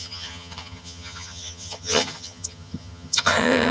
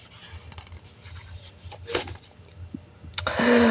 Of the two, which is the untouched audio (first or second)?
second